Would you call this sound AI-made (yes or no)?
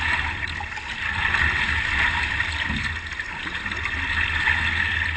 no